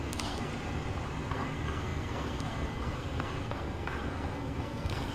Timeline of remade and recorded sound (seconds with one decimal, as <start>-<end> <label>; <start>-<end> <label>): 0.0-0.5 remade; 0.5-1.3 recorded; 1.3-5.1 remade